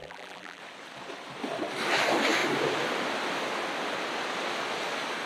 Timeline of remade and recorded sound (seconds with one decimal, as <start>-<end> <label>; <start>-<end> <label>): 0.0-0.6 remade; 0.6-5.3 recorded